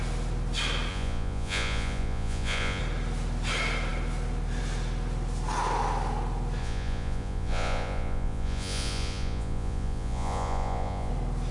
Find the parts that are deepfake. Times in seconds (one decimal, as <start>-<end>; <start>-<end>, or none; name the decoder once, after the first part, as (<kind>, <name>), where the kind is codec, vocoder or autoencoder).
0.9-2.8 (vocoder, Vocos); 6.6-11.1